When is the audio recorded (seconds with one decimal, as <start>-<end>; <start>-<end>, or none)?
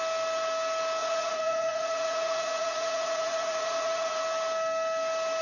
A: 0.0-1.0; 4.2-5.4